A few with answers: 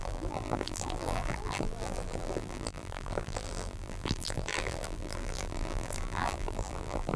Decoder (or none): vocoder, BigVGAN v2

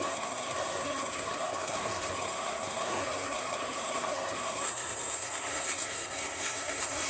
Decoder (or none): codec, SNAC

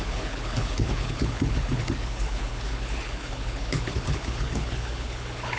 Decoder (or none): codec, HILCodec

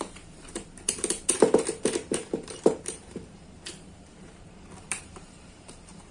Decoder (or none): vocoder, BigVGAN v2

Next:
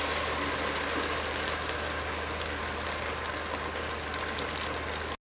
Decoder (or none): none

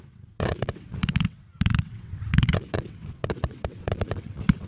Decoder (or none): vocoder, WaveNeXt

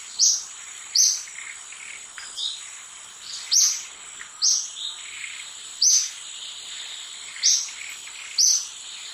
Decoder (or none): none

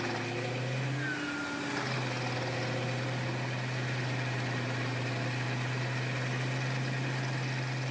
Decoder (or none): none